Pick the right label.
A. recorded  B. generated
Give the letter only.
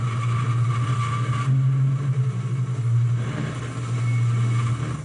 A